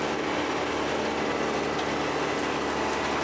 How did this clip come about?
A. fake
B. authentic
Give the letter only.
B